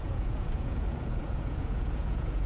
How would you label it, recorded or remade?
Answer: remade